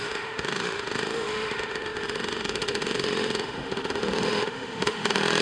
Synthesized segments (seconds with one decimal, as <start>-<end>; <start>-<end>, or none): 0.0-5.4

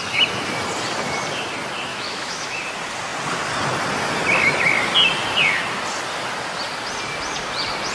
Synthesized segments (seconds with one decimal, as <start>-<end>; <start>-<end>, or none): 1.9-2.6